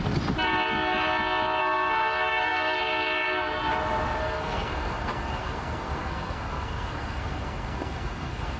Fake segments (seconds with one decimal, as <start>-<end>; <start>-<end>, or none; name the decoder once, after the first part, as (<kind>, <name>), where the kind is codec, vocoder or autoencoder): 1.6-2.8 (codec, SNAC); 4.2-8.6